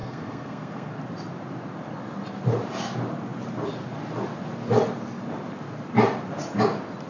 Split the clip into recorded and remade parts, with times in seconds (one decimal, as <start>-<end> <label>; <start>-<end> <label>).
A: 0.0-1.0 remade; 1.0-7.1 recorded